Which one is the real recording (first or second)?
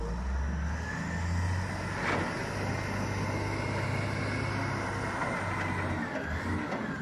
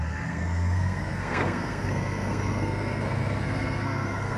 first